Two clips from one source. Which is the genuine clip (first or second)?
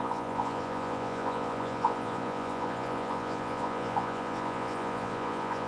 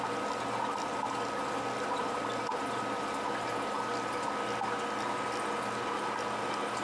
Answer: second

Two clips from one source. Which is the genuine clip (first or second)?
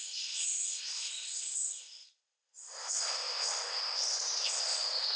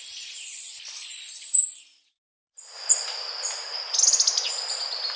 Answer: second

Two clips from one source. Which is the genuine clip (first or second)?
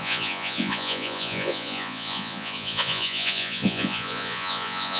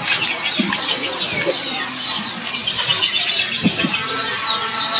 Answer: second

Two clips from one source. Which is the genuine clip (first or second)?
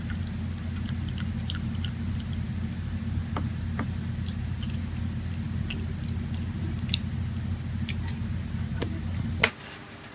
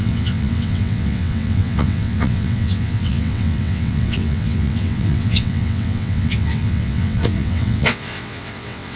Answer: first